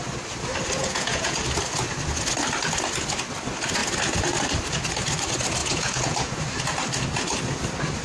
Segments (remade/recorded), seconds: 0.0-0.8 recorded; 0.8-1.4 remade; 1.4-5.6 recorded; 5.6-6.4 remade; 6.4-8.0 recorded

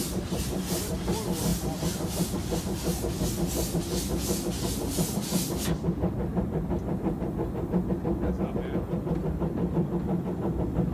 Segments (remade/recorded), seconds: 0.0-0.9 remade; 0.9-1.5 recorded; 1.5-2.6 remade; 2.6-10.9 recorded

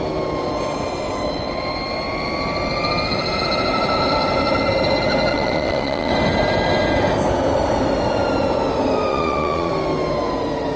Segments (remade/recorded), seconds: 0.0-5.3 recorded; 5.3-6.1 remade; 6.1-9.1 recorded; 9.1-9.7 remade; 9.7-10.8 recorded

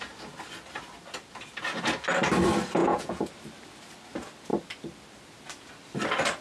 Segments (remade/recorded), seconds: 0.0-2.8 recorded; 2.8-3.3 remade; 3.3-6.4 recorded

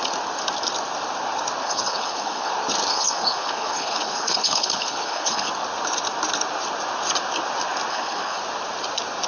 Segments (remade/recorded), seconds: 0.0-1.6 recorded; 1.6-2.5 remade; 2.5-2.9 recorded; 2.9-5.5 remade; 5.5-7.9 recorded; 7.9-8.4 remade; 8.4-9.3 recorded

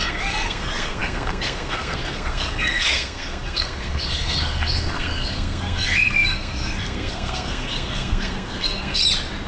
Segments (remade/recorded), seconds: 0.0-9.0 remade; 9.0-9.5 recorded

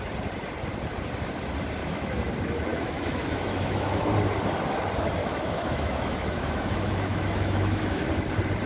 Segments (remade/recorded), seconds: 0.0-1.8 recorded; 1.8-2.3 remade; 2.3-2.7 recorded; 2.7-4.1 remade; 4.1-5.2 recorded; 5.2-8.1 remade; 8.1-8.7 recorded